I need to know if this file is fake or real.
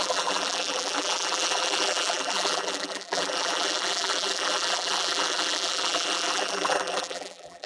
fake